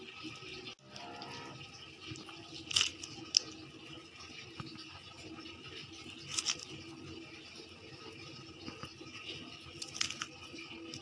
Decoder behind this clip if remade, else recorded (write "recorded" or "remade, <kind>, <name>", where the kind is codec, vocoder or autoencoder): recorded